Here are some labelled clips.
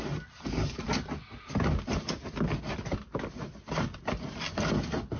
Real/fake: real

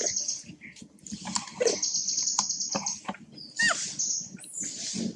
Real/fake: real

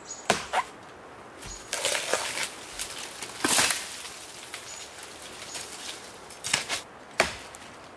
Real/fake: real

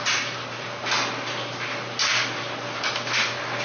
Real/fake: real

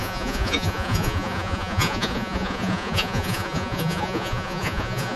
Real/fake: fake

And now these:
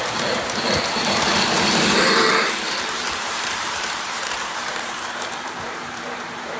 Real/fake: fake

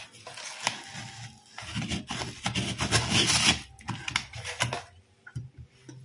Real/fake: real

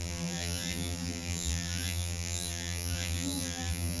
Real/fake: fake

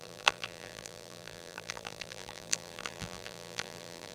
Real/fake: fake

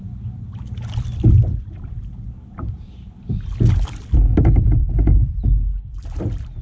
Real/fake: fake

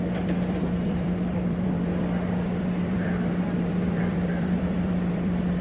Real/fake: fake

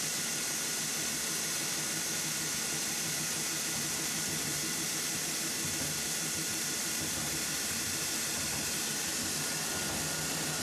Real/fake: real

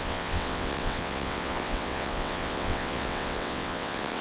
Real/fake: fake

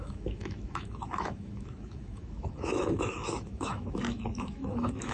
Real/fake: fake